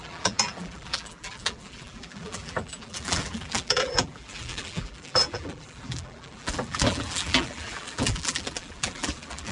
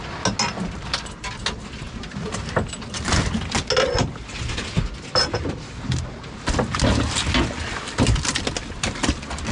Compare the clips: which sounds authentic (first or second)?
second